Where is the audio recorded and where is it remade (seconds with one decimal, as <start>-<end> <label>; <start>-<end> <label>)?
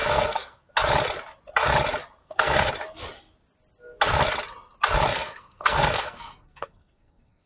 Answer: 0.0-0.7 remade; 0.7-2.2 recorded; 2.2-2.7 remade; 2.7-5.1 recorded; 5.1-7.5 remade